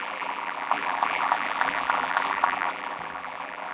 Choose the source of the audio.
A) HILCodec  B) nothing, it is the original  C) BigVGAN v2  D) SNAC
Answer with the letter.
C